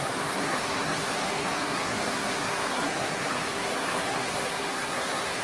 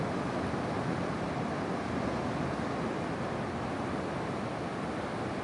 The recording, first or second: second